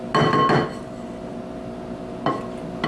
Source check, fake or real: real